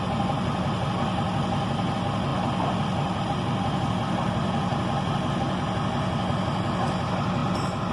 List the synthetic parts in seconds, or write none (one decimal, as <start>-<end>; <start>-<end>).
none